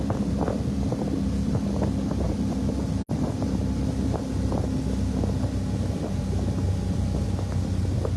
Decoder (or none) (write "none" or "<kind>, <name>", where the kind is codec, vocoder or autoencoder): none